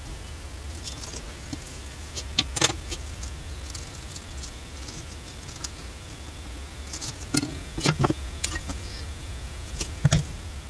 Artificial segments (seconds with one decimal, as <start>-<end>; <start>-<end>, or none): 7.5-10.0